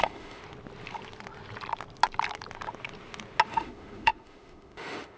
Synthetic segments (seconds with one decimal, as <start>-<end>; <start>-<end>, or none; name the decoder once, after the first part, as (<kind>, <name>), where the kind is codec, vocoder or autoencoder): 0.0-0.4 (autoencoder, DAC-VAE); 3.5-5.2